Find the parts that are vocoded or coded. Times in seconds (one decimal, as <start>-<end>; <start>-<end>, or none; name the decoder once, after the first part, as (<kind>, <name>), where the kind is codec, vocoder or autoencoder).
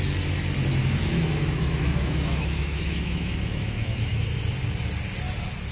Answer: 0.8-4.2 (autoencoder, DAC-VAE)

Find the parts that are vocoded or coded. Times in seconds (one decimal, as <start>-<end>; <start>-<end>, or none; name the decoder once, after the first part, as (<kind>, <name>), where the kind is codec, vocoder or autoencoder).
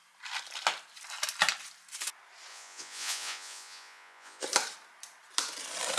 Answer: 2.5-4.4 (vocoder, Vocos)